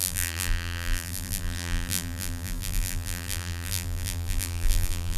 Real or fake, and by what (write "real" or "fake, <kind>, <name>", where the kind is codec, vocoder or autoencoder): fake, vocoder, BigVGAN v2